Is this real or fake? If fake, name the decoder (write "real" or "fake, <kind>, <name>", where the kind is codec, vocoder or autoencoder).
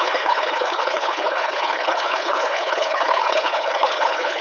fake, codec, HILCodec